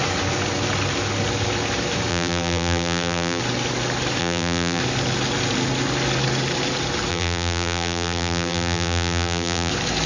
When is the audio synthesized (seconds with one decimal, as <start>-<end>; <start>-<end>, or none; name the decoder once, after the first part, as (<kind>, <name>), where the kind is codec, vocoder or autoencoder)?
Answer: 2.1-3.4 (vocoder, BigVGAN v2); 4.2-4.8; 7.1-9.7